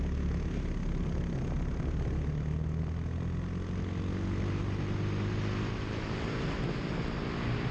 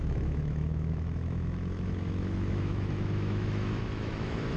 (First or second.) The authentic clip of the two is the first